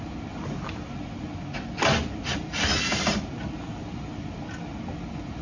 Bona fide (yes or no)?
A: yes